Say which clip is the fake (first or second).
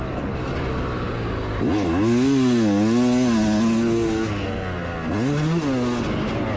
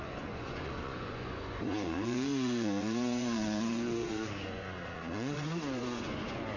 second